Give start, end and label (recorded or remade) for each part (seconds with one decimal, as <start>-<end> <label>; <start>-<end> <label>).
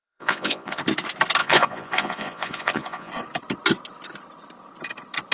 0.0-0.8 remade; 0.8-1.4 recorded; 1.4-3.1 remade; 3.1-5.3 recorded